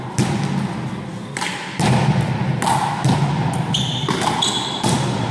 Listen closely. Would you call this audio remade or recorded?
recorded